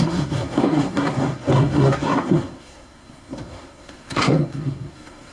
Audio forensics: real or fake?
fake